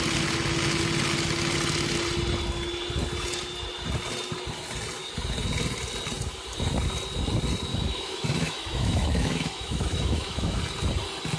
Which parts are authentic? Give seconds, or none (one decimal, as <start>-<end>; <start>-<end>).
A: 0.0-7.7; 10.6-11.4